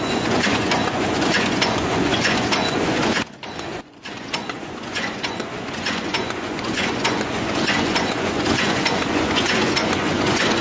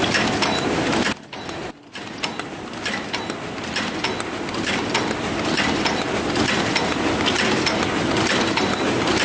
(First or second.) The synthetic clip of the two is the first